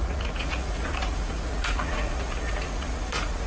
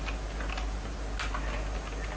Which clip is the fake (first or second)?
first